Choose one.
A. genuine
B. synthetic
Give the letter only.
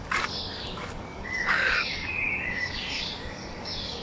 B